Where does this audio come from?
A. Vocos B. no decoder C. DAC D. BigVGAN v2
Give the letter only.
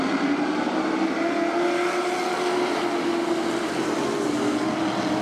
B